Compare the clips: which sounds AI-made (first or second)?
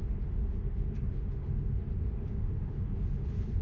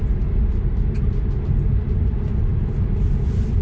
first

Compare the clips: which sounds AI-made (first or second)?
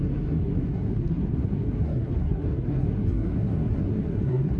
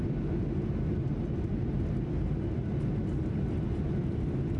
first